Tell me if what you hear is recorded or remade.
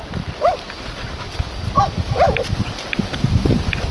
recorded